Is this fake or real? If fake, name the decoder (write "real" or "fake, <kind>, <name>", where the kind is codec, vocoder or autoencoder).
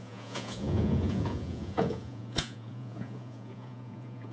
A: fake, vocoder, Vocos